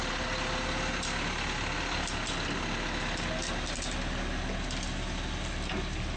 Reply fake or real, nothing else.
real